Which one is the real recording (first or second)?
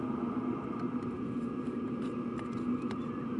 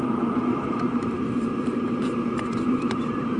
first